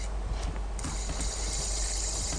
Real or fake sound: real